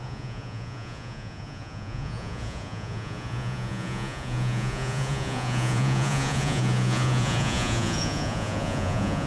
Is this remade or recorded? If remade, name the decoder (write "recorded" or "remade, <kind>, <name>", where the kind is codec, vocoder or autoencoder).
remade, vocoder, Vocos